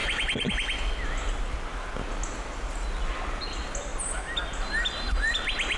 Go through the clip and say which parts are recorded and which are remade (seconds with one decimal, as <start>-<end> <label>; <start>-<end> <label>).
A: 0.0-5.8 recorded